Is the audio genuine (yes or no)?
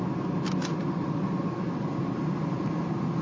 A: yes